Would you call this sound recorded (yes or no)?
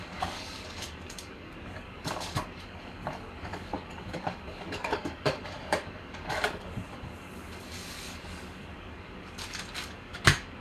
no